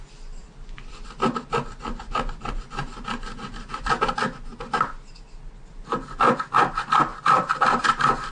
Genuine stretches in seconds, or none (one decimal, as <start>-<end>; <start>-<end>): 0.0-0.4; 4.0-7.1; 7.8-8.3